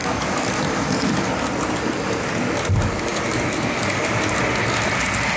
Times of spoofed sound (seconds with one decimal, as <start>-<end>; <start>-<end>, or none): none